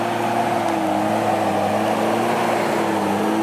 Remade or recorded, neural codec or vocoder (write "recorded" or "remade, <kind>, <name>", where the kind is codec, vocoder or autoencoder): recorded